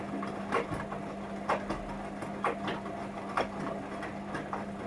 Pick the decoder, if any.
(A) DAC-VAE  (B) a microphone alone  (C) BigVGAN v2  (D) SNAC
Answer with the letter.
B